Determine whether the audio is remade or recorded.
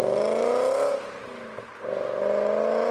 recorded